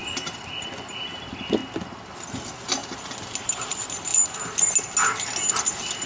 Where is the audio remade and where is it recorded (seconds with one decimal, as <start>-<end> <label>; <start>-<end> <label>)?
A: 0.0-6.1 recorded